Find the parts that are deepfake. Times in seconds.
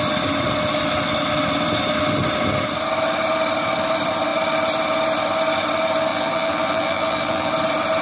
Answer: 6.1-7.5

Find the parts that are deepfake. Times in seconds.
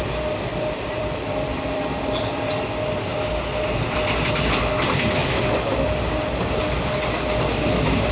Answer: 0.5-2.5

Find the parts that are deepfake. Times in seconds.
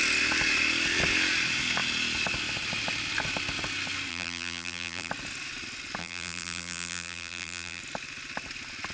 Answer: 4.1-5.1; 6.0-7.8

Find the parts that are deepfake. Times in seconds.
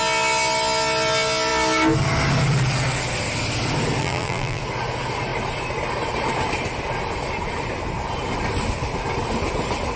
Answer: 4.0-4.6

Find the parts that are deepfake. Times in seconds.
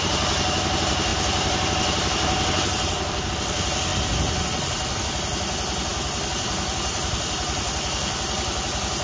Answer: 1.1-3.3; 3.9-4.9; 5.9-8.6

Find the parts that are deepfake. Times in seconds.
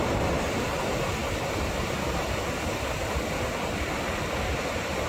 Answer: none